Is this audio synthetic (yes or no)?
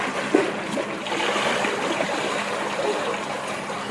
no